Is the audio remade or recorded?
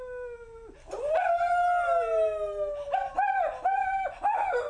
recorded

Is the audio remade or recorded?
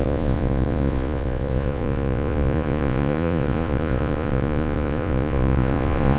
remade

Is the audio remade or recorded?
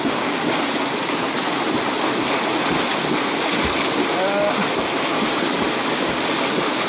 recorded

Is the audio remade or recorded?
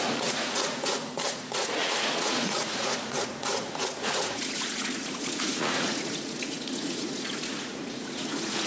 remade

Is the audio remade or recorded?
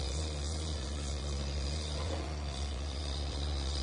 remade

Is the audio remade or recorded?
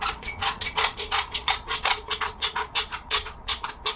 remade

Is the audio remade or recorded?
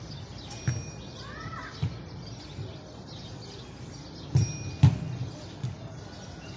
recorded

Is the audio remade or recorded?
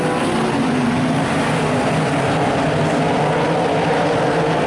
recorded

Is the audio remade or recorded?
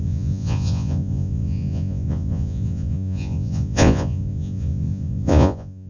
remade